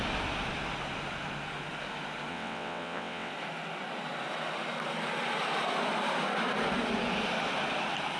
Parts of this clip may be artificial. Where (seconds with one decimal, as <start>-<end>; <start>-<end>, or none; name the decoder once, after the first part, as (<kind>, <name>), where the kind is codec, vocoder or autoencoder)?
2.3-3.3 (vocoder, WaveNeXt)